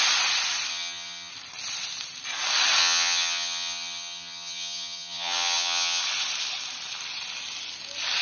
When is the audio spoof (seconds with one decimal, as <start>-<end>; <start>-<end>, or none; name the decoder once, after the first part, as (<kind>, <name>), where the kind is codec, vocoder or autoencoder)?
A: 0.7-1.3 (vocoder, HiFi-GAN); 2.8-6.0